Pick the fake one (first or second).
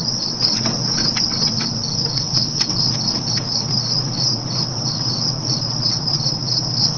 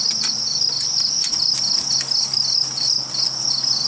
first